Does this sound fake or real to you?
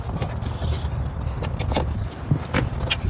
real